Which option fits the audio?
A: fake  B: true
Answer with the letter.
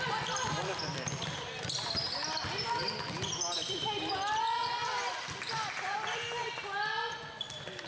B